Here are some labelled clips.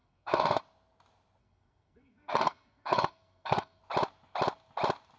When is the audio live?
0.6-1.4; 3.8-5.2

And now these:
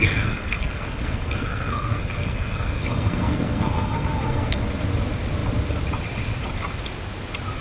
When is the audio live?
4.6-7.6